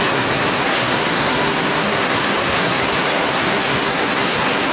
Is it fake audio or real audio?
fake